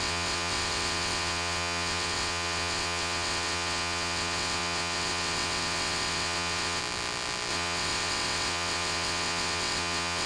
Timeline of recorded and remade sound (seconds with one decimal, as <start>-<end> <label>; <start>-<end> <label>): 0.0-6.8 remade; 6.8-7.5 recorded; 7.5-10.3 remade